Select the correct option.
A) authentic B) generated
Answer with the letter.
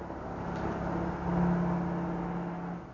A